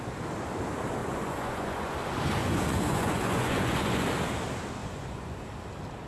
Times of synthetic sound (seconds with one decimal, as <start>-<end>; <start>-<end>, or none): 1.0-1.9; 2.4-4.1; 4.8-5.4